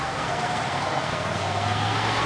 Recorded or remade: remade